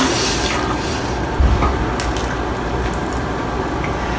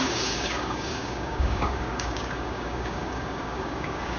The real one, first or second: first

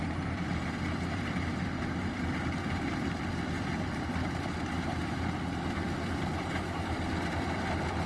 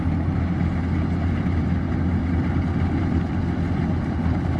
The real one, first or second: second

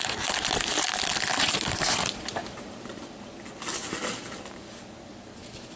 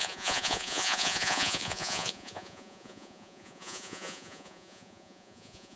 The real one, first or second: first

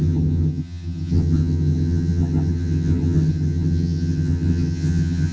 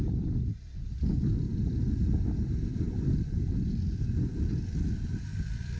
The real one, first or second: second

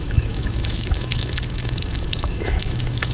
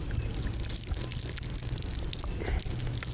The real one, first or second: second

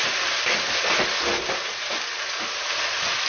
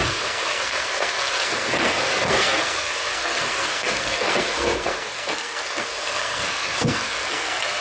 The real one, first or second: first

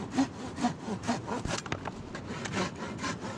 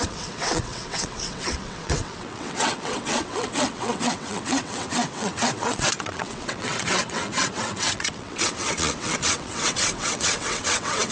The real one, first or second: first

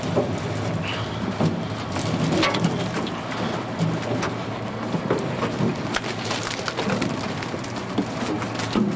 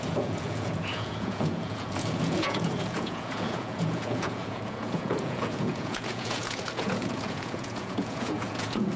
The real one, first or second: first